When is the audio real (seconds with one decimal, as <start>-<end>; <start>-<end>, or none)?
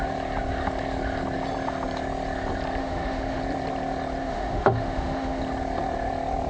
0.0-2.8; 3.4-4.2; 5.4-6.5